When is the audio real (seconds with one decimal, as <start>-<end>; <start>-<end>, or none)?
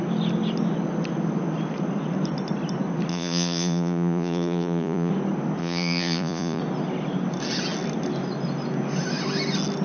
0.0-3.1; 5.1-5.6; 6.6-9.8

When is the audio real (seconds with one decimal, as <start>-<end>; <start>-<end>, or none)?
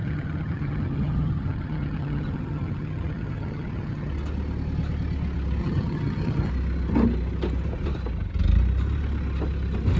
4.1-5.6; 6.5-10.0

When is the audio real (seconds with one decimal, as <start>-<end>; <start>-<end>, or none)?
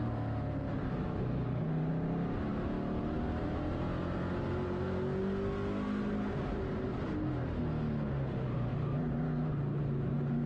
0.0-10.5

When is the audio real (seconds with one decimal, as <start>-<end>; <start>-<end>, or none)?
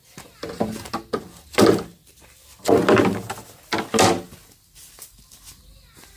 0.0-6.2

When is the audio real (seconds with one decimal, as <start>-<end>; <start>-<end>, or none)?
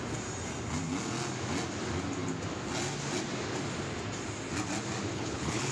0.0-5.1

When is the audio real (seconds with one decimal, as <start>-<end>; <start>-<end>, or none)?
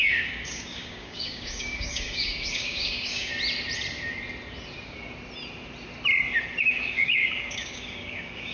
3.3-6.6